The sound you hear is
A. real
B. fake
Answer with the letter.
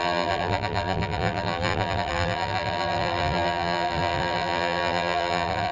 B